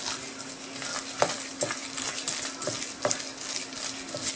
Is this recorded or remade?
recorded